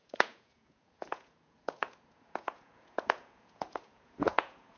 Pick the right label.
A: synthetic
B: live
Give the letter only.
A